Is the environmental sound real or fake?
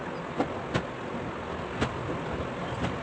real